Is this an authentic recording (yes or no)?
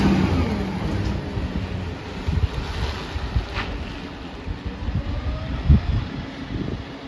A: yes